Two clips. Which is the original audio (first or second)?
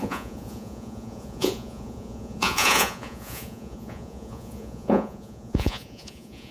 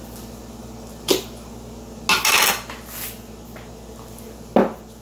second